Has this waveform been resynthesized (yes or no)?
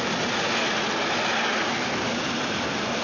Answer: no